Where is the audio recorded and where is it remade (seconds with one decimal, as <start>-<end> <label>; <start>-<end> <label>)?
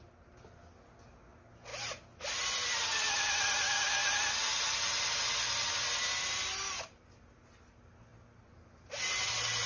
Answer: 0.0-9.7 recorded